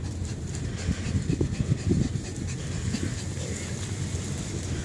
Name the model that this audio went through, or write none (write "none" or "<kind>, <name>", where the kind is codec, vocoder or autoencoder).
none